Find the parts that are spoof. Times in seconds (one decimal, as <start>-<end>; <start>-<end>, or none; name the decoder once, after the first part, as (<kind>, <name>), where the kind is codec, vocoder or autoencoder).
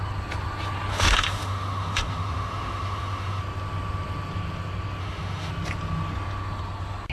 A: 0.9-3.4 (autoencoder, DAC-VAE); 5.0-5.5